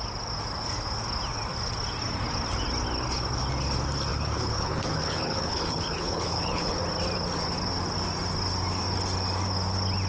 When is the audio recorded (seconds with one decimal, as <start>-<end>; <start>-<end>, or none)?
0.0-4.1; 6.8-10.1